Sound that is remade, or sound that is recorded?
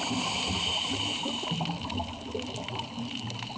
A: recorded